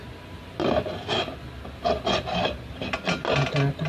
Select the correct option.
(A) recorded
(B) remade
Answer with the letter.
A